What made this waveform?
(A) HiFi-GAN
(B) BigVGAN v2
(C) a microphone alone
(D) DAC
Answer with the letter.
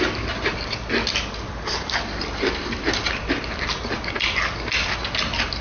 C